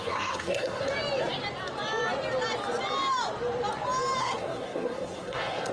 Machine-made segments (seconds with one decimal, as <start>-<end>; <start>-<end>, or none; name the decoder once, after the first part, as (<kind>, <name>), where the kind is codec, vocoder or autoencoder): 0.0-0.9 (codec, SNAC); 4.2-5.7